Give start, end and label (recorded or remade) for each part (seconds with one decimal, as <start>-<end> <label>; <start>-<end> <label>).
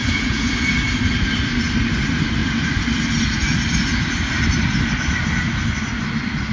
0.0-0.5 remade; 0.5-6.5 recorded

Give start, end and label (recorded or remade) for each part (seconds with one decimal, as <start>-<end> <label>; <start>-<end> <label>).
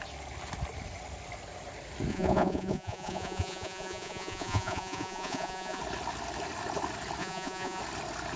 0.0-2.1 recorded; 2.1-5.8 remade; 5.8-7.2 recorded; 7.2-7.8 remade; 7.8-8.4 recorded